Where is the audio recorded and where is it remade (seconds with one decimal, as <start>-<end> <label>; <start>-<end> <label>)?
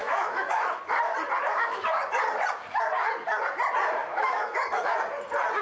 0.0-0.8 remade; 0.8-1.5 recorded; 1.5-2.0 remade; 2.0-4.0 recorded; 4.0-5.0 remade; 5.0-5.6 recorded